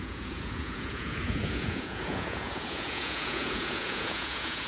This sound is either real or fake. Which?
fake